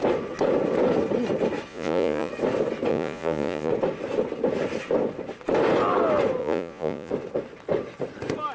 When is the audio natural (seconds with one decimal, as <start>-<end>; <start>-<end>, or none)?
0.0-1.7; 2.3-2.9; 3.7-6.4; 7.1-8.5